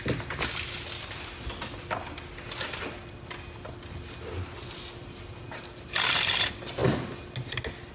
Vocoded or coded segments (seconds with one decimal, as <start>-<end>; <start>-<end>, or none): none